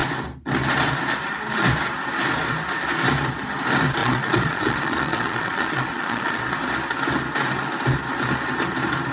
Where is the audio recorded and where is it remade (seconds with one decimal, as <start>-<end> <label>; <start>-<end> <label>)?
0.0-4.0 recorded; 4.0-6.4 remade; 6.4-9.1 recorded